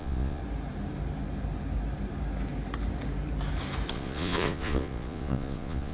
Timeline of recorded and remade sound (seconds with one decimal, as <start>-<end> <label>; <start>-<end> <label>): 0.0-0.4 remade; 0.4-3.9 recorded; 3.9-5.9 remade